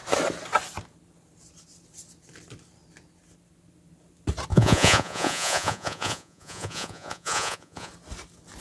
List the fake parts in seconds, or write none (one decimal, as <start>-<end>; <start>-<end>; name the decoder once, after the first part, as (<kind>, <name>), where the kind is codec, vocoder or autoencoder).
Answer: 4.5-7.9 (vocoder, Vocos)